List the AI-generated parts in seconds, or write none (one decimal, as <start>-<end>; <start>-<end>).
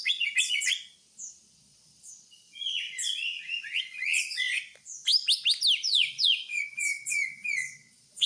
0.0-0.7; 1.5-4.5; 5.8-8.3